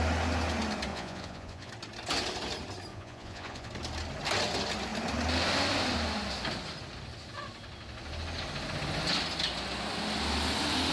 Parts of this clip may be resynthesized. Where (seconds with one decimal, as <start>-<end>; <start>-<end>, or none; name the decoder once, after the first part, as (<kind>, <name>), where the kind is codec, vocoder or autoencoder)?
0.9-1.7 (vocoder, Vocos); 2.9-3.7